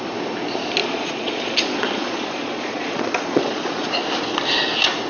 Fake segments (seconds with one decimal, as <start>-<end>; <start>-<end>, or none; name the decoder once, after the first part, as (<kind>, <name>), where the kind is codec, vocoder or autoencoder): 0.8-3.9 (vocoder, Vocos)